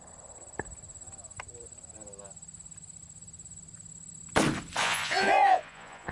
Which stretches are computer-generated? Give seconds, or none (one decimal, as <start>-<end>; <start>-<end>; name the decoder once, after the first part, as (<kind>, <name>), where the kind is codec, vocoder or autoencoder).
4.8-6.1 (vocoder, Vocos)